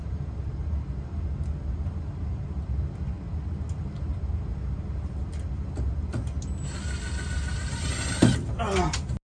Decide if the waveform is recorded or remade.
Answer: recorded